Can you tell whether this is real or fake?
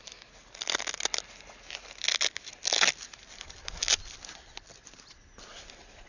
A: real